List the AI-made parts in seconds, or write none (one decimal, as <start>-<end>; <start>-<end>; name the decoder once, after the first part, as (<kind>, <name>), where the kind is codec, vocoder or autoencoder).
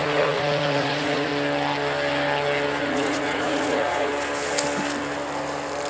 0.0-1.3 (vocoder, Vocos); 2.8-4.1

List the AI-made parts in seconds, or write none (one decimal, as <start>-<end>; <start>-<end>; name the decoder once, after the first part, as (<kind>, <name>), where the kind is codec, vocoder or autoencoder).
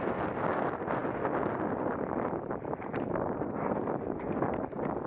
none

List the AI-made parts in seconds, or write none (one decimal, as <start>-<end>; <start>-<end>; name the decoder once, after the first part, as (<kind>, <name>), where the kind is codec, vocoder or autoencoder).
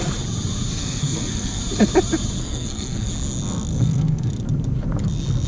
0.8-1.6 (codec, SNAC); 2.4-3.1; 3.7-4.3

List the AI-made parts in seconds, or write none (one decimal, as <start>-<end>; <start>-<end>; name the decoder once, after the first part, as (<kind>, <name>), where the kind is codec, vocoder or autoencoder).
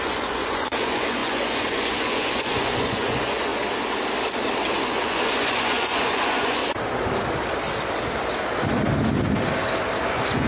0.0-3.5 (vocoder, Vocos); 4.8-6.6; 10.1-10.5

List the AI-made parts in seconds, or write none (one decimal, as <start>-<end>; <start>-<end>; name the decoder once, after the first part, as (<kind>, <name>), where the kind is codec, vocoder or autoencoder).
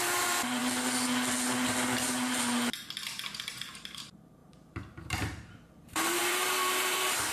0.0-0.6 (vocoder, BigVGAN v2); 3.5-7.3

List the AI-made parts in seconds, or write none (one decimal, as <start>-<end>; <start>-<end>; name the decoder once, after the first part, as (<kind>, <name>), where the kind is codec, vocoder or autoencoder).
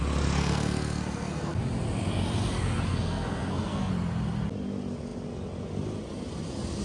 0.4-1.6 (codec, SNAC); 2.9-3.9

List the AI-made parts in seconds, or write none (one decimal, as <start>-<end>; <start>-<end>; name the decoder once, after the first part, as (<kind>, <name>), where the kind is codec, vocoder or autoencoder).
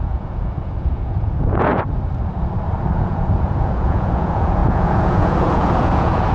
0.0-1.7 (vocoder, Vocos); 2.9-6.3